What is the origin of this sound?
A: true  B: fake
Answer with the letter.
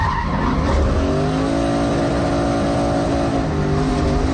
A